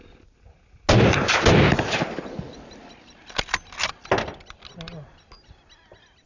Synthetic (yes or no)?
no